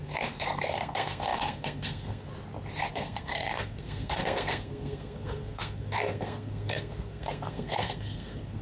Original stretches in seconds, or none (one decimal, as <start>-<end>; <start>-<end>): 2.3-2.9